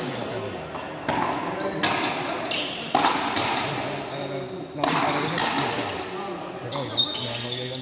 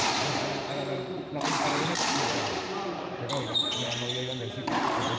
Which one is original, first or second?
first